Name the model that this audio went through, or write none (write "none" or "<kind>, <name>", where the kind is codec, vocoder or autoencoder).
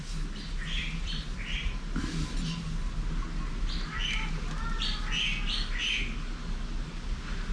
none